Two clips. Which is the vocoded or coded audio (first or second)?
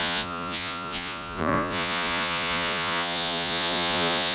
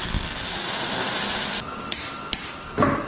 first